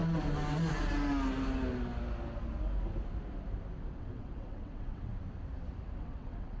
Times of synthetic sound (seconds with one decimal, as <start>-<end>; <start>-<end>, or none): 3.9-5.1; 5.8-6.6